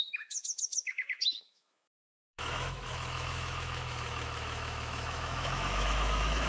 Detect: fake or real fake